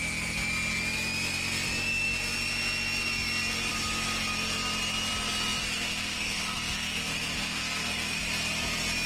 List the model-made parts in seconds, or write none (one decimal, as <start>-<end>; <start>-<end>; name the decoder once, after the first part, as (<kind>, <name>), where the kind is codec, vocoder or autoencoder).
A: 5.6-8.2 (codec, SNAC)